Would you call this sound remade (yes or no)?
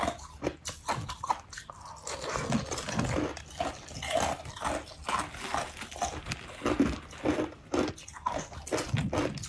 no